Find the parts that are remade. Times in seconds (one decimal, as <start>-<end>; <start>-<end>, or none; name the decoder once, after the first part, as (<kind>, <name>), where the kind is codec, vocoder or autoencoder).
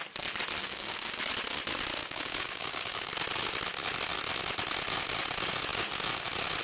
0.6-1.2 (codec, DAC); 2.0-3.1